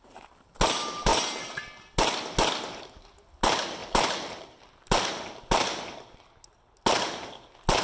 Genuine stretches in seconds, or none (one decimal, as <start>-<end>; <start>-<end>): 0.0-3.8; 5.0-7.8